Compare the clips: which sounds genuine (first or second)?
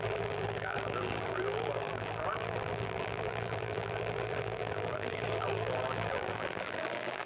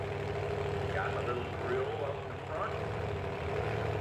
second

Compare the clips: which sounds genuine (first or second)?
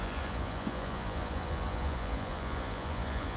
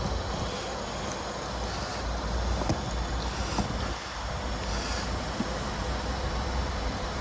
second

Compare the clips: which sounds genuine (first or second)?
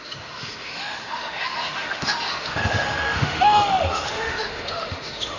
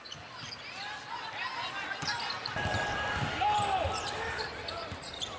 second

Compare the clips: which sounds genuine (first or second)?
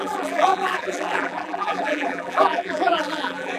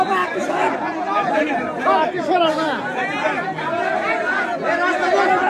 second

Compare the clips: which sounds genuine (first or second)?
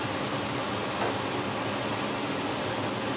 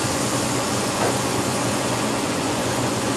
first